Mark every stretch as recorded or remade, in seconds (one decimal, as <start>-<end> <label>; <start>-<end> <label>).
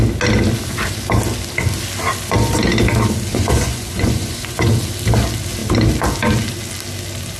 0.0-3.3 recorded; 3.3-4.7 remade; 4.7-7.4 recorded